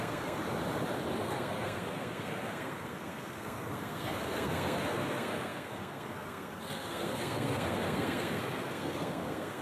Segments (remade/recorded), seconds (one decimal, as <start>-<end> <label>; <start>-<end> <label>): 0.0-0.4 remade; 0.4-1.2 recorded; 1.2-9.6 remade